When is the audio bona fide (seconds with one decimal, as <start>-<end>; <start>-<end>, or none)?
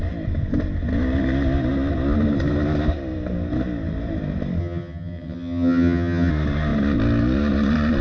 0.0-4.6; 6.3-8.0